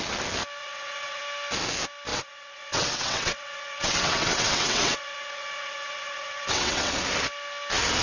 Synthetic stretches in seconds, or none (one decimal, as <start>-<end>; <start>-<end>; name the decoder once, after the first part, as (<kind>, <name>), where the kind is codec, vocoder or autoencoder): 0.6-1.2 (vocoder, WaveNeXt); 2.1-6.9